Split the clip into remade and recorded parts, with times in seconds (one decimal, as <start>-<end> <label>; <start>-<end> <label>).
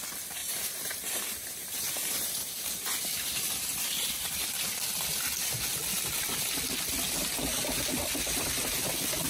0.0-0.4 recorded; 0.4-4.7 remade; 4.7-9.3 recorded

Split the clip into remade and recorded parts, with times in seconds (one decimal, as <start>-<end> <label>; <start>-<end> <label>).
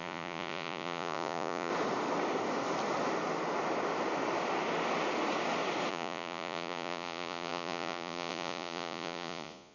0.0-1.7 remade; 1.7-5.9 recorded; 5.9-9.7 remade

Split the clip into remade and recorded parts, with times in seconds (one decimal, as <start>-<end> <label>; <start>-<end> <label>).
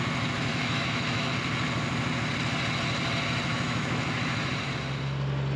0.0-0.5 recorded; 0.5-1.3 remade; 1.3-3.5 recorded; 3.5-4.5 remade; 4.5-5.6 recorded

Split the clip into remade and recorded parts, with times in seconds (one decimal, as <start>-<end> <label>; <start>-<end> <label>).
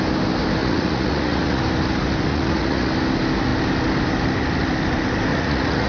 0.0-0.6 recorded; 0.6-1.6 remade; 1.6-2.3 recorded; 2.3-2.9 remade; 2.9-5.3 recorded; 5.3-5.9 remade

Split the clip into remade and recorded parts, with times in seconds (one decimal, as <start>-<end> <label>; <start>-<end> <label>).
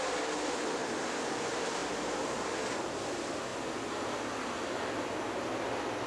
0.0-6.1 recorded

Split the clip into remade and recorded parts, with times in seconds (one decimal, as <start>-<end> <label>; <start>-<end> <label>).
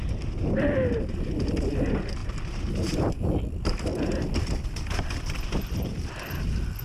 0.0-2.2 recorded; 2.2-6.3 remade; 6.3-6.8 recorded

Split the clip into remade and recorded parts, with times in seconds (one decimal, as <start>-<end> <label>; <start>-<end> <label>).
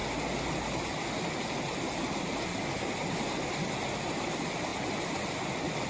0.0-5.9 recorded